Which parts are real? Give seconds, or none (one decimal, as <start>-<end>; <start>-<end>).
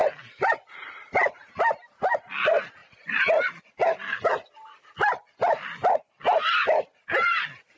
none